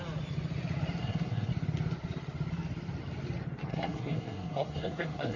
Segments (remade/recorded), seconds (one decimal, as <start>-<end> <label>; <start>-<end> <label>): 0.0-1.0 recorded; 1.0-1.5 remade; 1.5-3.7 recorded; 3.7-5.4 remade